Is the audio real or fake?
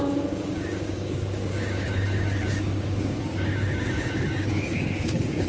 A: fake